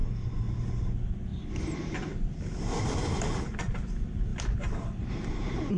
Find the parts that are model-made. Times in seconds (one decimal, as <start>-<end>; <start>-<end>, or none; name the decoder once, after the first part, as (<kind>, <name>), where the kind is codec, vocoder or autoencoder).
none